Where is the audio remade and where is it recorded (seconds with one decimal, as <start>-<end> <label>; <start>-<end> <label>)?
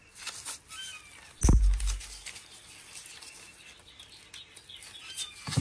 0.0-5.6 recorded